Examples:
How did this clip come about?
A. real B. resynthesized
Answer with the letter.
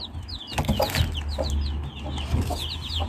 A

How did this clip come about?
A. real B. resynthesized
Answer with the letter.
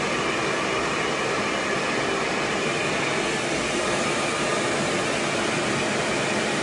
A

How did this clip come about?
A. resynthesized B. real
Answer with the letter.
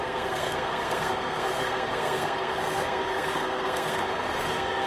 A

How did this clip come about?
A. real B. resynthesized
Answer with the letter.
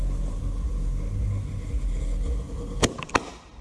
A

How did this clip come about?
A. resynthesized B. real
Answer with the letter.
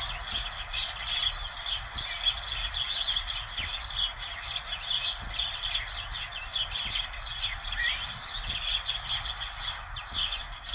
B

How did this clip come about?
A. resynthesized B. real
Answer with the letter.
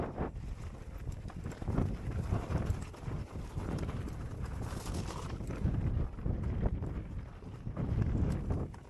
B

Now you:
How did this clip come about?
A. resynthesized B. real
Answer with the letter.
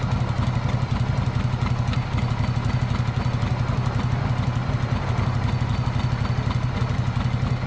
B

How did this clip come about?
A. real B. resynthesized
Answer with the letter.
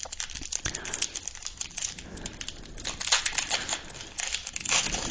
A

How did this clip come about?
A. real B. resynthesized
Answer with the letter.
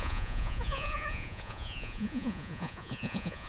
B